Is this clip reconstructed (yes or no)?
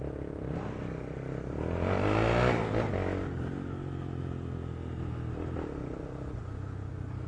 no